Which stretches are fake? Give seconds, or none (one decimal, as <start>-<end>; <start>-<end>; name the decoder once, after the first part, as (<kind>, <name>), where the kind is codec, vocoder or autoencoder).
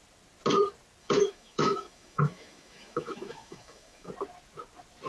1.0-4.1 (autoencoder, DAC-VAE)